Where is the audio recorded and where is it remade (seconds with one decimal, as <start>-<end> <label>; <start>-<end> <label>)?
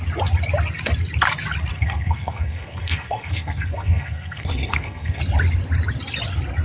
0.0-1.7 recorded; 1.7-5.2 remade; 5.2-6.6 recorded